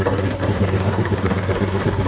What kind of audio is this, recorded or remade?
remade